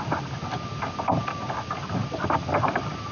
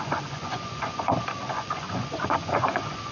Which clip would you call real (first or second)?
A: first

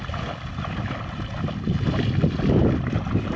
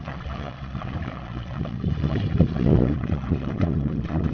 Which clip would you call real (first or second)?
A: first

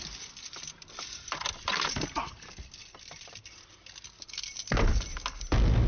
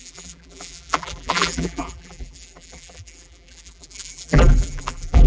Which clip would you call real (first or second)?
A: first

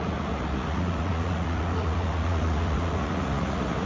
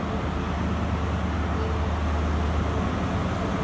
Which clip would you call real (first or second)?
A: second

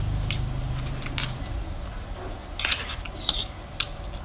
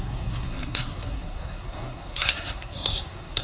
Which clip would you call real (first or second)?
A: first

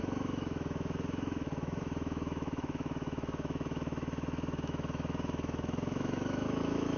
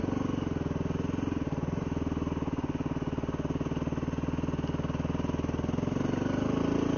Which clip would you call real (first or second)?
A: second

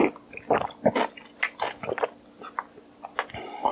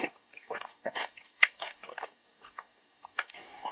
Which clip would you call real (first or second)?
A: first